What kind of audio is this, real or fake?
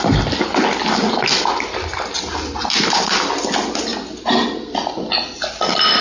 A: real